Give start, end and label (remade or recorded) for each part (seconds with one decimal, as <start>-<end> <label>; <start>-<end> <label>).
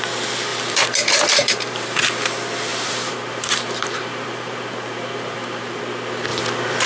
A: 0.0-0.5 recorded; 0.5-2.0 remade; 2.0-2.7 recorded; 2.7-5.8 remade; 5.8-6.9 recorded